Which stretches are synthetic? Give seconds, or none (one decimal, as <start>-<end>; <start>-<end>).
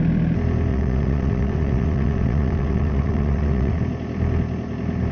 0.7-3.8